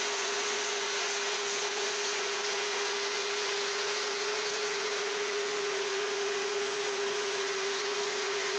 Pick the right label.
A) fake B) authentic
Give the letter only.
A